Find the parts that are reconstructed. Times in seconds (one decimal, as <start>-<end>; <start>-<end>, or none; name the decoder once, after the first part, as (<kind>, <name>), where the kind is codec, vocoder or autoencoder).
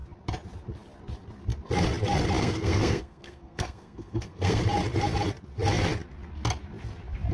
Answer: 2.4-4.6 (codec, SNAC)